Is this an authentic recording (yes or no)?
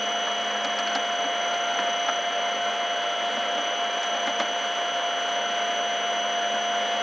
yes